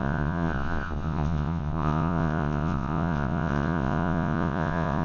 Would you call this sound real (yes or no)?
no